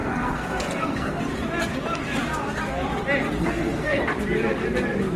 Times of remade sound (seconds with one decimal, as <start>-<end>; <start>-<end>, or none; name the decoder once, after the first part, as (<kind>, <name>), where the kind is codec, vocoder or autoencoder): 0.0-1.2 (codec, SNAC); 3.4-4.0